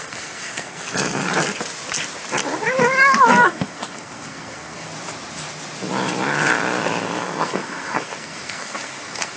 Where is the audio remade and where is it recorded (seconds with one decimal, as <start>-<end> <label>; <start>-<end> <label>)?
0.0-1.2 remade; 1.2-3.3 recorded; 3.3-4.9 remade; 4.9-7.0 recorded; 7.0-9.4 remade